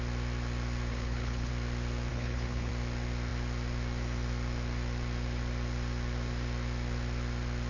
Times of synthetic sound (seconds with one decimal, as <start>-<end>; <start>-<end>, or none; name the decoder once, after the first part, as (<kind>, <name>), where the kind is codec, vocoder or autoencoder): 0.9-1.5 (codec, HILCodec); 2.1-2.7